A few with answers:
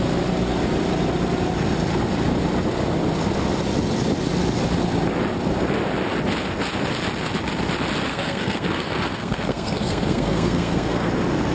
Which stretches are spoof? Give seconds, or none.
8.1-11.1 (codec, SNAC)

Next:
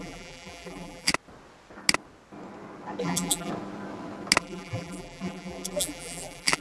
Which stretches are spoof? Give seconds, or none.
0.0-1.1 (vocoder, BigVGAN v2); 3.0-3.5; 4.4-6.6

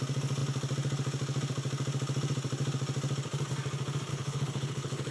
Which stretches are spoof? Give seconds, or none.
4.1-5.1 (codec, HILCodec)

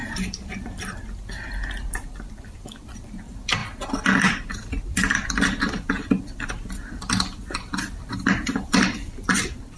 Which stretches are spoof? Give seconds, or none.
0.0-3.6 (vocoder, BigVGAN v2); 4.8-9.8

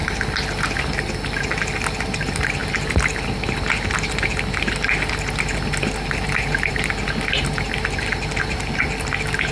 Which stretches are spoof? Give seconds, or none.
none

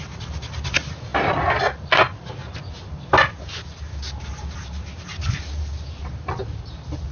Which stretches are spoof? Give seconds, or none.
none